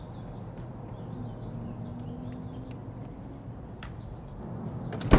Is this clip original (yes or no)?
yes